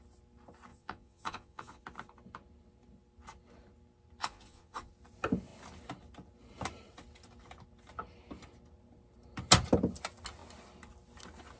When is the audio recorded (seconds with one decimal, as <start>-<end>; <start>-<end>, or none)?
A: 0.0-0.7; 1.8-4.2; 4.9-11.6